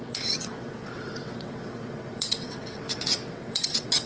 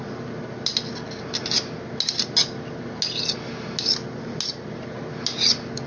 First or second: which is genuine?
second